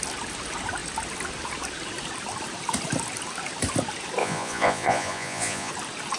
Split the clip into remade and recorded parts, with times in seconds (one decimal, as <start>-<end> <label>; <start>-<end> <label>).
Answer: 0.0-4.2 recorded; 4.2-5.7 remade; 5.7-6.2 recorded